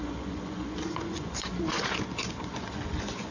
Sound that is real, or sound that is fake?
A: fake